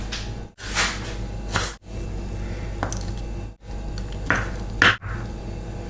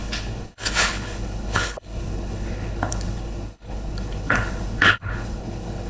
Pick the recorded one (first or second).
first